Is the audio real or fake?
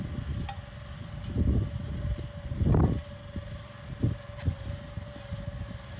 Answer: real